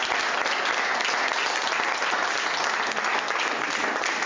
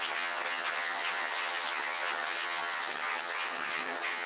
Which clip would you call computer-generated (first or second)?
second